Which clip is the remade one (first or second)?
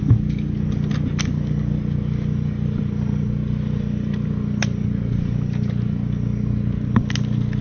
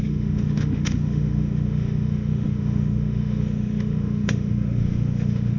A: second